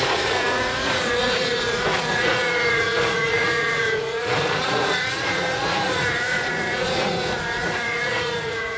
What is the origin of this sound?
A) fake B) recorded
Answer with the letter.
A